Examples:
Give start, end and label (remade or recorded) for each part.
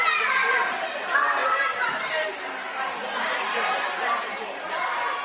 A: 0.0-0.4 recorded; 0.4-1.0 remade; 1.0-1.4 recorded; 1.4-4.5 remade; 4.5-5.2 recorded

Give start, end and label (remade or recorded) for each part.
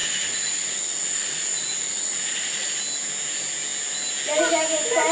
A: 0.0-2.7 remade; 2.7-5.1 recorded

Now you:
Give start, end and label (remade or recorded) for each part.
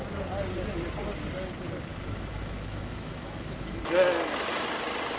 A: 0.0-1.9 recorded; 1.9-3.9 remade; 3.9-5.2 recorded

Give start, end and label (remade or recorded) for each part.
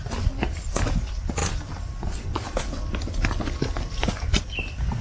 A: 0.0-5.0 recorded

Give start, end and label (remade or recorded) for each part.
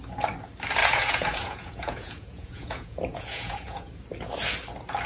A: 0.0-0.8 recorded; 0.8-3.9 remade; 3.9-5.1 recorded